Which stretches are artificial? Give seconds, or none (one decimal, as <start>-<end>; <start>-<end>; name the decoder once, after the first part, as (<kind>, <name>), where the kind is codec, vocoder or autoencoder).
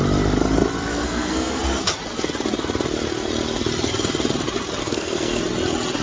0.9-1.6 (codec, SNAC); 4.8-5.4